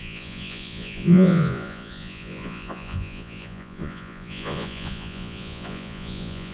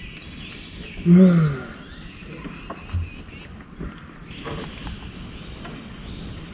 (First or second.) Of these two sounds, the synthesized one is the first